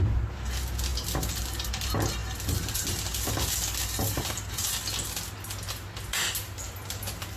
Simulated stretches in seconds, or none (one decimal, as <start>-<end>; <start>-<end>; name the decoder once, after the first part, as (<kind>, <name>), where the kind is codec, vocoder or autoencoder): none